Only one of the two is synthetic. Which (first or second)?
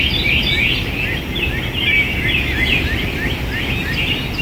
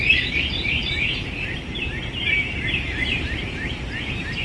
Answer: second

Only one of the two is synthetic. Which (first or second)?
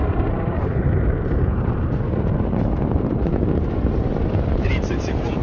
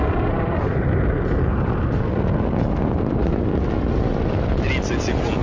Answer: first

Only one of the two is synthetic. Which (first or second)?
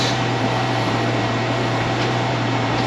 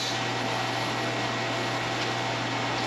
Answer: first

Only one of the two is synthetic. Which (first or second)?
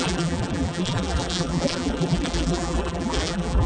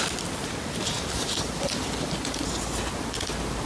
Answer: first